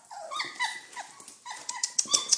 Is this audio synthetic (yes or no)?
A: yes